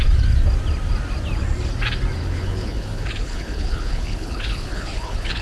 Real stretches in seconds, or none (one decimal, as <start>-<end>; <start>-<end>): 0.0-2.2